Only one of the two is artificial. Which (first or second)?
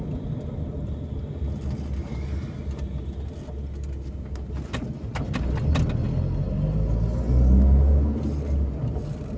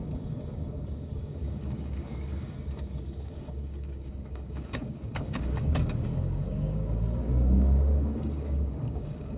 second